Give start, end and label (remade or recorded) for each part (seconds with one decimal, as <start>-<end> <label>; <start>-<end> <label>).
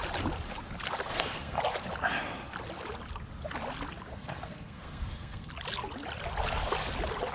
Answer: 0.0-1.1 recorded; 1.1-1.6 remade; 1.6-4.1 recorded; 4.1-5.5 remade; 5.5-7.3 recorded